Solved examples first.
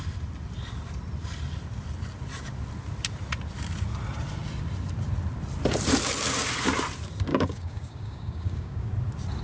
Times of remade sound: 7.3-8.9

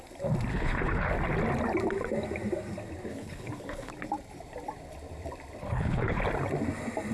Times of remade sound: 0.5-1.1; 3.1-3.9; 5.6-6.2

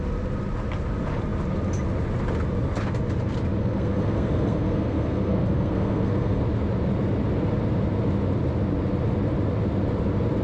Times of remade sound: 3.6-6.4

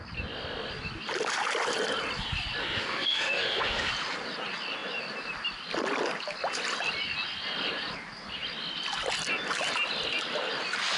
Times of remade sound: 2.6-3.9

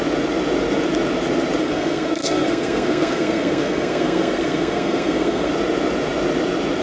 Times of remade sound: 1.6-5.5

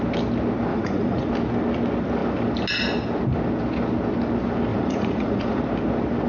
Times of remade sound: 0.7-1.3; 4.7-5.6

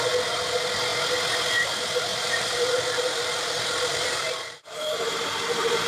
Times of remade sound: 2.1-5.9

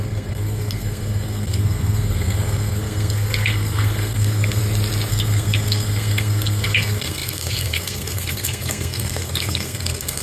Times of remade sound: 0.0-4.6; 5.1-10.2